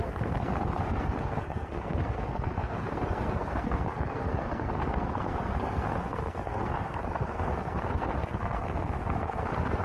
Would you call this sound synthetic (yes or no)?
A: yes